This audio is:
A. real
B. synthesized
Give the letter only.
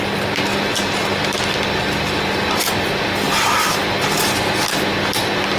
A